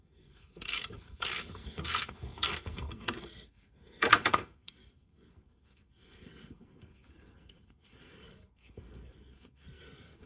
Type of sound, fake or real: fake